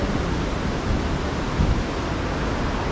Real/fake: real